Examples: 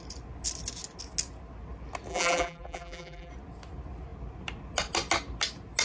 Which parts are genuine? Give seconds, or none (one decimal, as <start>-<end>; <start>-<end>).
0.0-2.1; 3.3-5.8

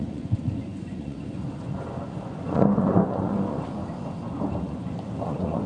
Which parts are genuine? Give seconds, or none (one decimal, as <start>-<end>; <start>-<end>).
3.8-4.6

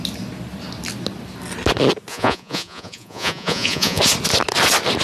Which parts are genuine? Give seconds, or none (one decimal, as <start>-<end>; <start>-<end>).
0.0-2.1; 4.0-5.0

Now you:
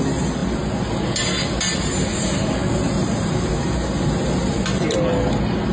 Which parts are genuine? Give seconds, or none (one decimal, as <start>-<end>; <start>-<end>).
0.0-5.7